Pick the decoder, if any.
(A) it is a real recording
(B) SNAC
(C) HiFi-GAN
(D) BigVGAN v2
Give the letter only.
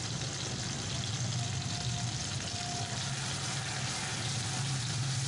A